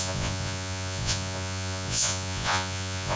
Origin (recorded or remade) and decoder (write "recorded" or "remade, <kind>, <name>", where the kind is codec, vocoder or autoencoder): remade, vocoder, Vocos